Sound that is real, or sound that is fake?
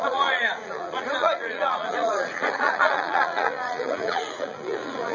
fake